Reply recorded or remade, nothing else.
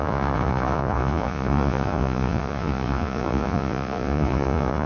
remade